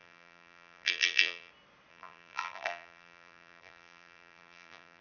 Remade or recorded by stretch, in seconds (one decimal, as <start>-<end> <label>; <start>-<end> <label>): 0.0-1.5 remade; 1.5-1.9 recorded; 1.9-5.0 remade